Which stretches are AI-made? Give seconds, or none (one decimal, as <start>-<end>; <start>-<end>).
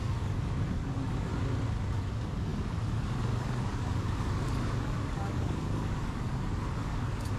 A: 0.0-1.3; 1.9-7.4